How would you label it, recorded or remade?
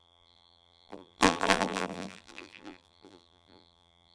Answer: remade